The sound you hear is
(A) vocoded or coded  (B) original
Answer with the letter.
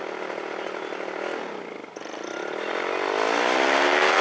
B